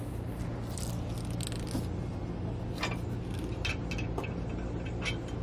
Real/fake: real